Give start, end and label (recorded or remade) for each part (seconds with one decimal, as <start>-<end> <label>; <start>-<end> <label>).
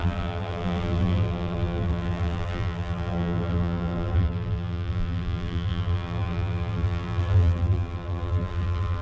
0.0-9.0 remade